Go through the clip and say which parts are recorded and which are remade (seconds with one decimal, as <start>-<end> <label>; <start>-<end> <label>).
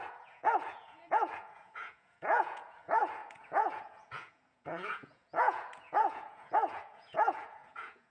0.0-8.1 remade